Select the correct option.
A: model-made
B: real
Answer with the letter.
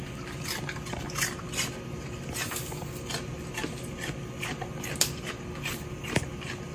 B